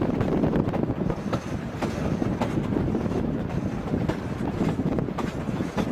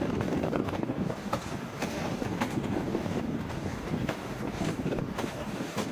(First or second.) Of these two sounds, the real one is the first